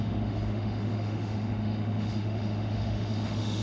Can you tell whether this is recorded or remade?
remade